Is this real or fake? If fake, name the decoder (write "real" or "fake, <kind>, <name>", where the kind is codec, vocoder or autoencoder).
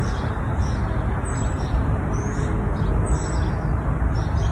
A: real